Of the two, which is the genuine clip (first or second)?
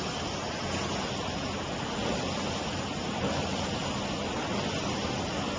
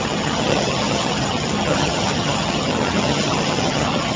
first